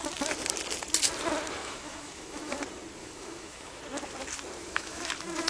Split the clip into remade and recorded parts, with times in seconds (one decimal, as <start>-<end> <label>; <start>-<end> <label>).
0.0-1.6 recorded; 1.6-2.6 remade; 2.6-3.0 recorded; 3.0-3.8 remade; 3.8-4.6 recorded; 4.6-5.1 remade; 5.1-5.5 recorded